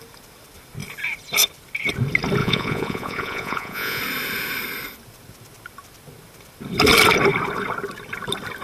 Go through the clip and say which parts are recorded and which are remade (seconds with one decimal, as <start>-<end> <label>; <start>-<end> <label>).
0.0-2.4 recorded; 2.4-4.0 remade; 4.0-8.6 recorded